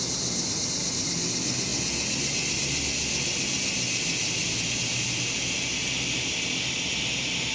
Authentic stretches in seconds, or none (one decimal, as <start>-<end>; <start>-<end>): 0.0-7.5